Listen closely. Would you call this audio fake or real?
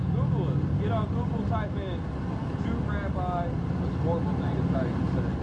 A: real